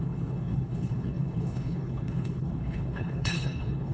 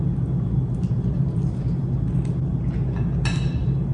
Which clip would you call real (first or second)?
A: second